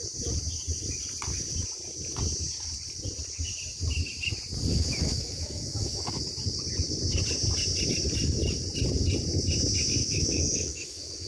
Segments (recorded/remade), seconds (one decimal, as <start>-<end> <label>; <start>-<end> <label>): 0.0-4.7 recorded; 4.7-6.1 remade; 6.1-10.0 recorded; 10.0-11.3 remade

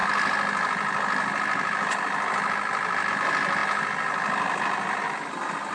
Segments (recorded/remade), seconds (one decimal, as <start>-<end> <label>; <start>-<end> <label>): 0.0-5.7 recorded

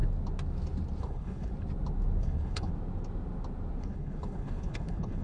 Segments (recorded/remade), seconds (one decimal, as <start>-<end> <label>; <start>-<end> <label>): 0.0-1.0 recorded; 1.0-1.5 remade; 1.5-2.2 recorded; 2.2-2.7 remade; 2.7-3.8 recorded; 3.8-5.2 remade

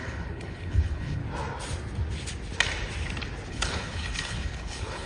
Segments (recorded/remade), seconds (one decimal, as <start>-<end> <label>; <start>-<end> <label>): 0.0-1.2 remade; 1.2-3.5 recorded; 3.5-5.1 remade

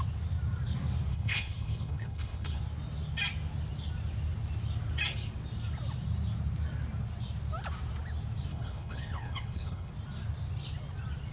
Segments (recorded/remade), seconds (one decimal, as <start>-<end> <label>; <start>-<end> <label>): 0.0-1.1 recorded; 1.1-2.6 remade; 2.6-8.5 recorded; 8.5-9.9 remade; 9.9-11.3 recorded

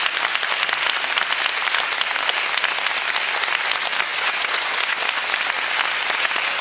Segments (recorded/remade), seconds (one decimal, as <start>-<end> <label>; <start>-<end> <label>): 0.0-4.1 recorded; 4.1-5.0 remade; 5.0-6.6 recorded

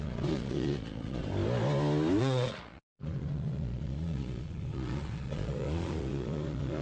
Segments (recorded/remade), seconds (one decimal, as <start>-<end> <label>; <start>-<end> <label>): 0.0-1.2 remade; 1.2-2.2 recorded; 2.2-6.8 remade

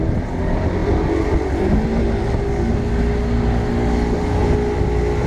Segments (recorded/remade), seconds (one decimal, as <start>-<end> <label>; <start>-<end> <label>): 0.0-5.3 recorded